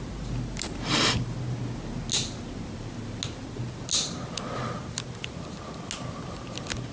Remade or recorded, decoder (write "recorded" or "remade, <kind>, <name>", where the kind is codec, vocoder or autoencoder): recorded